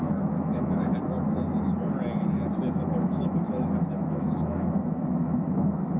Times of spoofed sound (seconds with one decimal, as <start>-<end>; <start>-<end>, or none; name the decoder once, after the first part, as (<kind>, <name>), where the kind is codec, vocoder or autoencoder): 0.0-0.9 (autoencoder, DAC-VAE); 2.7-6.0